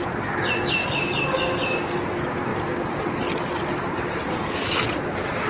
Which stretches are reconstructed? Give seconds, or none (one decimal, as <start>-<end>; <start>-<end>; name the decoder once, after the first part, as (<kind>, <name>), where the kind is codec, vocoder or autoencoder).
0.8-1.9 (codec, DAC)